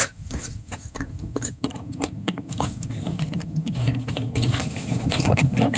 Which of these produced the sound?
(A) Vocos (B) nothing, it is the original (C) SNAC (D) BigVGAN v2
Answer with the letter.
C